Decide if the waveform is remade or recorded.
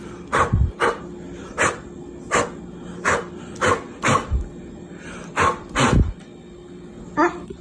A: recorded